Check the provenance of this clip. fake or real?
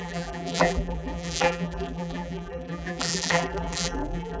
fake